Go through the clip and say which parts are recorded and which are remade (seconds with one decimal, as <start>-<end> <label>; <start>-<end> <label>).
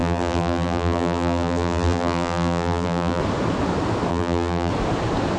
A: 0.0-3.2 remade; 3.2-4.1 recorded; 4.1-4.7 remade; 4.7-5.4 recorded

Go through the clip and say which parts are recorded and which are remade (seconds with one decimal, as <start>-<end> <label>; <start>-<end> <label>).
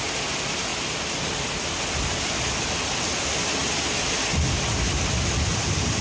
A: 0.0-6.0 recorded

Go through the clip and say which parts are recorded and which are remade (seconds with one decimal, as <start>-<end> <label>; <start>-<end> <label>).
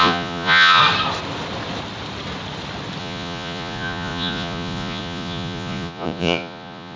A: 0.0-0.8 remade; 0.8-3.0 recorded; 3.0-7.0 remade